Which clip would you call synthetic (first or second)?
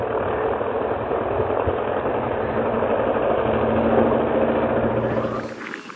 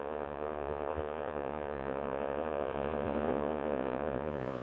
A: second